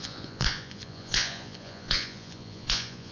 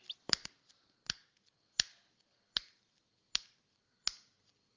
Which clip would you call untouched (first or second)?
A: second